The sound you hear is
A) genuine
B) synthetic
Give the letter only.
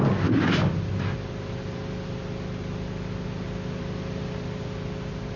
A